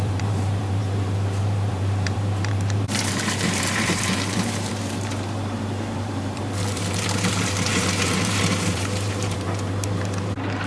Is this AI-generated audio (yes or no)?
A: yes